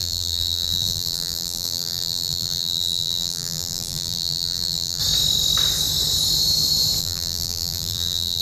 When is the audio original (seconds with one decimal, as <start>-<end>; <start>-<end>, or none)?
5.0-7.0